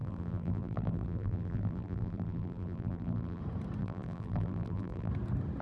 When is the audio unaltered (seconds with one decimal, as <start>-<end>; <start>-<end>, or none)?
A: 3.4-3.8; 5.1-5.6